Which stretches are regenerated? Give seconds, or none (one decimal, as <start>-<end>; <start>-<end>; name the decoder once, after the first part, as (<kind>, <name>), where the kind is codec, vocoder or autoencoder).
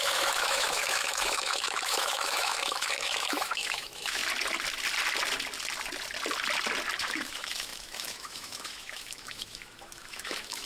0.0-4.2 (autoencoder, DAC-VAE); 7.0-10.7